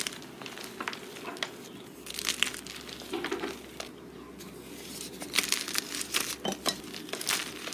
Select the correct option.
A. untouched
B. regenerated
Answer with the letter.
A